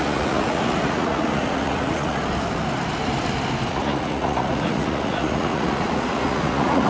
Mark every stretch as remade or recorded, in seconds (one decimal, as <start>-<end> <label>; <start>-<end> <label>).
0.0-2.2 remade; 2.2-3.7 recorded; 3.7-6.9 remade